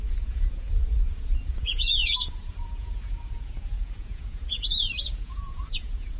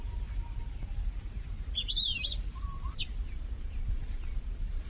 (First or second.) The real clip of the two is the second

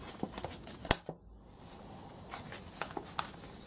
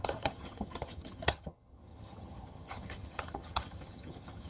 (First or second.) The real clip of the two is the first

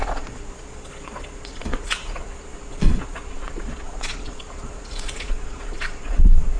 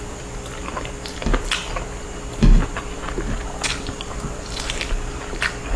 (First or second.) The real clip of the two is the second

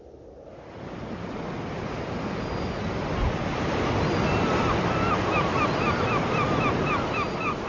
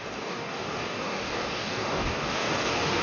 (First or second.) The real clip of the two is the first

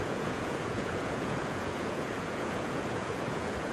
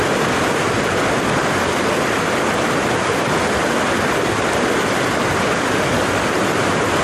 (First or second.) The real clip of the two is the second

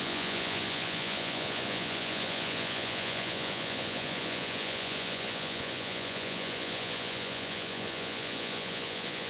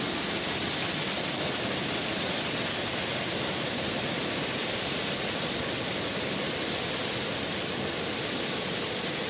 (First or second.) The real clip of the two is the second